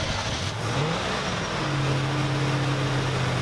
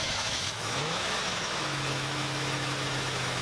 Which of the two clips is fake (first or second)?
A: second